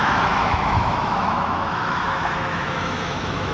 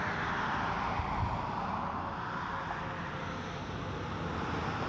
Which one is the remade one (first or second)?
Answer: first